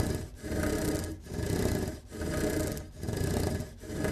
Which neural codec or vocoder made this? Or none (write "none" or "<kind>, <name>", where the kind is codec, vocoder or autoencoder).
none